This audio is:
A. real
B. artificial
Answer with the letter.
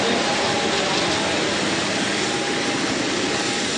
A